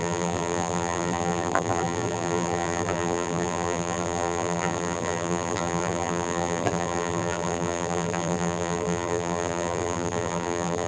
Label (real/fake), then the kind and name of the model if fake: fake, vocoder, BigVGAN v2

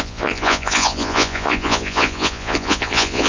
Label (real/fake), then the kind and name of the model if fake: fake, vocoder, Vocos